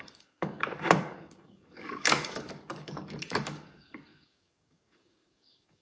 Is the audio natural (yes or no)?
no